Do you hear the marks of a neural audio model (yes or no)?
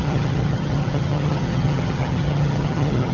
yes